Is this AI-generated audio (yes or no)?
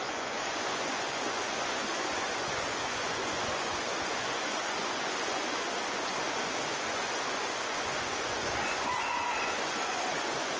yes